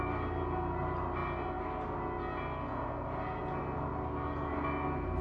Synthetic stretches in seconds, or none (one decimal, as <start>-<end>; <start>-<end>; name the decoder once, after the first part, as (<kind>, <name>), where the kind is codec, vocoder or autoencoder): none